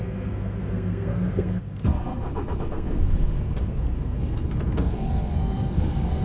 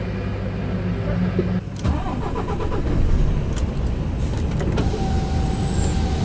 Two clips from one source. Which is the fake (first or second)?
first